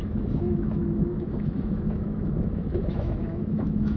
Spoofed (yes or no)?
yes